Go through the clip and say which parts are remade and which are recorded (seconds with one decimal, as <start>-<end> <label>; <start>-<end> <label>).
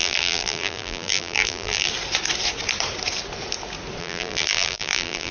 0.0-1.9 remade; 1.9-4.0 recorded; 4.0-5.3 remade